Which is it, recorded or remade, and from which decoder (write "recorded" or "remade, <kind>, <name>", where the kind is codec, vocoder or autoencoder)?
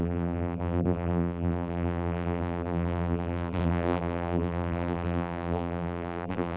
remade, vocoder, BigVGAN v2